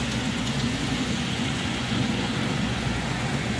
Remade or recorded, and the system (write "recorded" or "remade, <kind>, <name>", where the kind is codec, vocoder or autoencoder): remade, vocoder, Vocos